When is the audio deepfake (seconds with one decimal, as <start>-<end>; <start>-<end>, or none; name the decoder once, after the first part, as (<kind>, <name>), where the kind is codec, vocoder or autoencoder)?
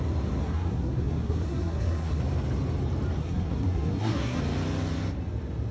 0.4-2.2 (codec, SNAC); 3.2-4.4